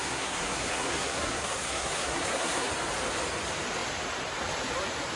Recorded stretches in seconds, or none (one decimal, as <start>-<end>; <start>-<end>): 2.7-5.2